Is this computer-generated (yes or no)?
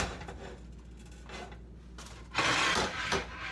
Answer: no